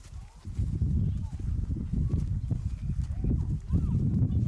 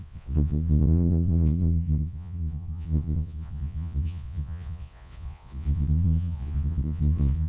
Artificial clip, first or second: second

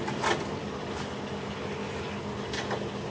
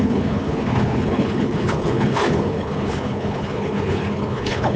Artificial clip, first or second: second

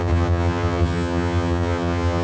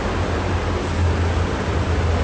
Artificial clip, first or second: first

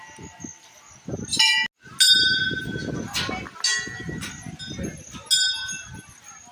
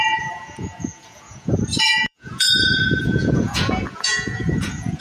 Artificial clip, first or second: second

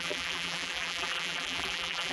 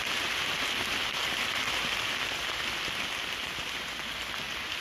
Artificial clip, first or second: first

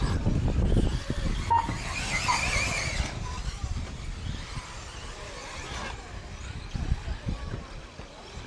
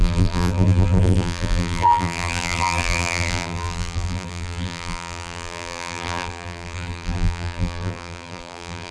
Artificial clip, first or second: second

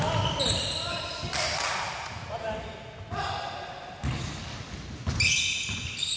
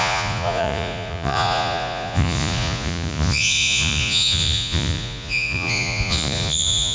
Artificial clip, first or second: second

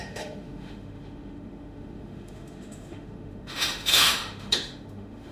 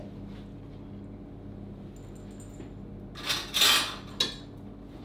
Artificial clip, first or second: first